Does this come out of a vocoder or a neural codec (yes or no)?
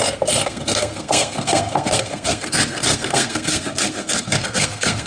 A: yes